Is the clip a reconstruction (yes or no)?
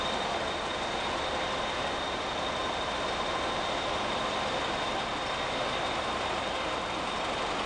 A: no